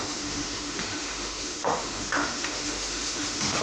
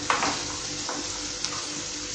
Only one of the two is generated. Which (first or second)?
first